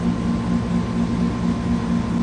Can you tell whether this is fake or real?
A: real